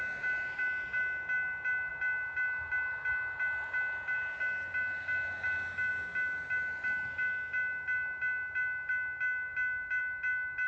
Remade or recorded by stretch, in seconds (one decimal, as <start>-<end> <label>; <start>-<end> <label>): 0.0-10.7 recorded